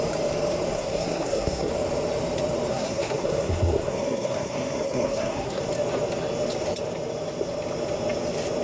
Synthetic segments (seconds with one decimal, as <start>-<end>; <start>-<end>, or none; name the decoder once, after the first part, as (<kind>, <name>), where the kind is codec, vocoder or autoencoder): 0.7-1.7 (codec, SNAC); 2.7-5.6